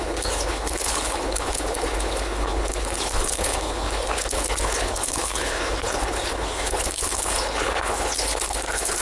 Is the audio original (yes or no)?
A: no